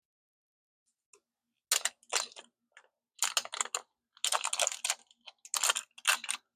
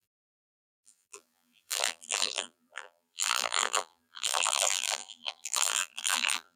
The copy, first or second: second